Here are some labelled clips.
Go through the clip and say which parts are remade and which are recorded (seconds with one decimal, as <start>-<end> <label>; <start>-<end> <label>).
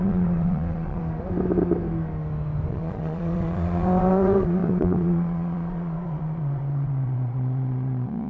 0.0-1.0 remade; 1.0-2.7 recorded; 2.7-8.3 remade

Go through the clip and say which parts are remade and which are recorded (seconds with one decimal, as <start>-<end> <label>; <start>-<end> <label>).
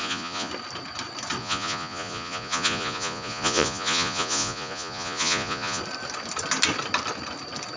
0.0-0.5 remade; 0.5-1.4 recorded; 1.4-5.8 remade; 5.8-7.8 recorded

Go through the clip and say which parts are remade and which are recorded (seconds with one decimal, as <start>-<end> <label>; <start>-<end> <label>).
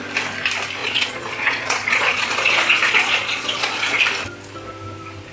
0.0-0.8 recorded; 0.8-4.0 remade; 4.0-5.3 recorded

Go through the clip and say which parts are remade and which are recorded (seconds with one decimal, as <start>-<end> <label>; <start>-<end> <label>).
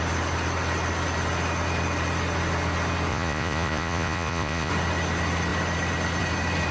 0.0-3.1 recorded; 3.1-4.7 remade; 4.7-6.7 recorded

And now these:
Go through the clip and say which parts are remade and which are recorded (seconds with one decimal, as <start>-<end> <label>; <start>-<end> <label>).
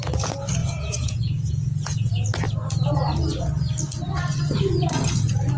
0.0-0.6 recorded; 0.6-2.1 remade; 2.1-5.6 recorded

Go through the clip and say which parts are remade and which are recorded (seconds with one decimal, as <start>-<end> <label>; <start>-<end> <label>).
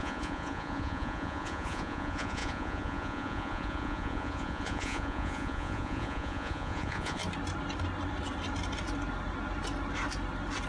0.0-7.2 remade; 7.2-10.7 recorded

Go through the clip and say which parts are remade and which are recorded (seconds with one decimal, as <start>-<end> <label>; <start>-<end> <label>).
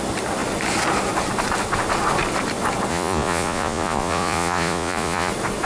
0.0-2.9 recorded; 2.9-5.3 remade; 5.3-5.7 recorded